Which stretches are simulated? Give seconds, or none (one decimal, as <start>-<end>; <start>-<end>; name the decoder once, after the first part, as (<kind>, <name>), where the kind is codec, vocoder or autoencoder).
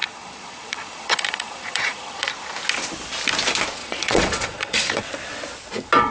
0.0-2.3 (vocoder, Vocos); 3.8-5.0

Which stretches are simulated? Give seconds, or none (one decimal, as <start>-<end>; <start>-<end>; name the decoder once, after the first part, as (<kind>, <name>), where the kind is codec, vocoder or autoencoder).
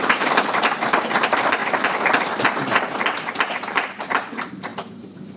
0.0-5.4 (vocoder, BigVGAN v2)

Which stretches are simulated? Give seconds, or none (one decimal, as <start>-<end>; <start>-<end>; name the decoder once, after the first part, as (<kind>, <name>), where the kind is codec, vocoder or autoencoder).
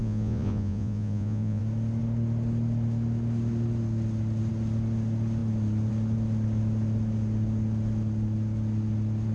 0.0-1.6 (vocoder, Vocos)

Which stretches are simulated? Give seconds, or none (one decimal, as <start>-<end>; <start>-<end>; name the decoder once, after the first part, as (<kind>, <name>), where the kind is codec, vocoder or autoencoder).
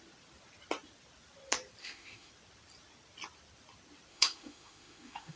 1.8-2.3 (autoencoder, DAC-VAE); 4.1-5.4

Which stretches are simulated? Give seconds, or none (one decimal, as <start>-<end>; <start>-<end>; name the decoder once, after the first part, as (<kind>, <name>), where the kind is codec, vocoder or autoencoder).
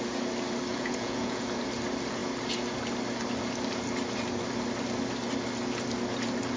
0.7-1.4 (vocoder, Vocos)